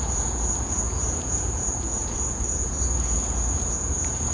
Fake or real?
fake